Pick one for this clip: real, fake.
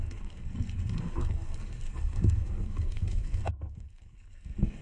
fake